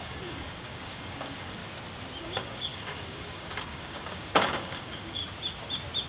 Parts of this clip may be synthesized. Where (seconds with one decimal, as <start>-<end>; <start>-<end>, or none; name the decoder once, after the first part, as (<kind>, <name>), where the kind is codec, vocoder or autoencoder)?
0.0-1.6 (codec, DAC); 2.2-5.2